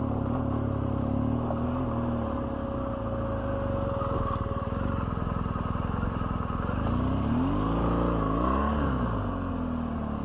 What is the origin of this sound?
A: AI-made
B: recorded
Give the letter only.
B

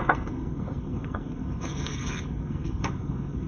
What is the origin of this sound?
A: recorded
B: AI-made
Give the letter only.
B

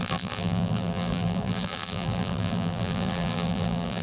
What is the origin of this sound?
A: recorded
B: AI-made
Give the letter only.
B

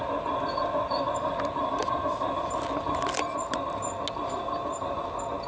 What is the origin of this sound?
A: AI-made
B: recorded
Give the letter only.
B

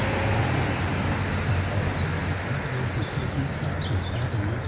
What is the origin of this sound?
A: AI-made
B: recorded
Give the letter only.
B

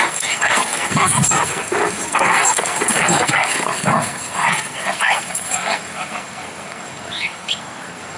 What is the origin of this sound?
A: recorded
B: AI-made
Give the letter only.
B